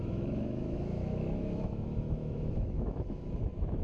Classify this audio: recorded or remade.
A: remade